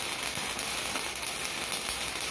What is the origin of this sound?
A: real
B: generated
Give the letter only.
A